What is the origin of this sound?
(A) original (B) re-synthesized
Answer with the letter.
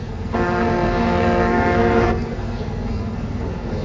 B